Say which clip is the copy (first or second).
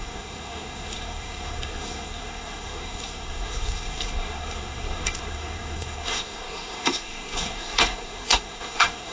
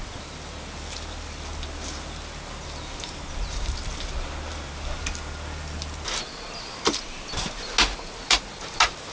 first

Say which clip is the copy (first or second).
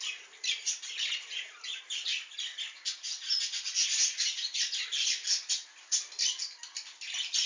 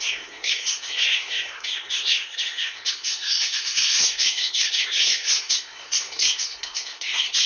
second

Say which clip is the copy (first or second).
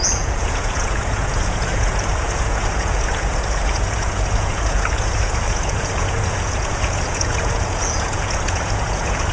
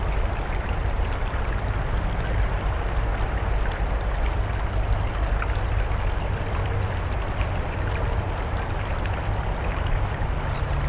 first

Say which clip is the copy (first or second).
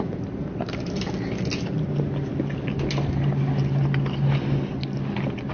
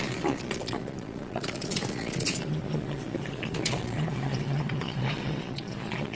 second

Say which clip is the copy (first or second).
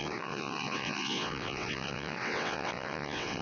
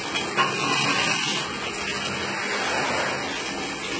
first